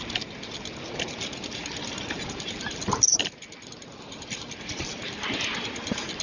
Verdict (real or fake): real